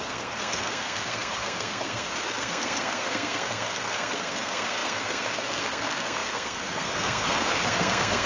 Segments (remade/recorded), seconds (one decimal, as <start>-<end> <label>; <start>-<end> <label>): 0.0-8.3 remade